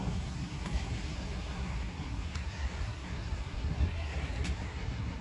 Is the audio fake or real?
fake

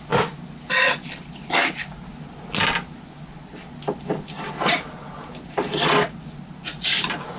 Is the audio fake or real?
real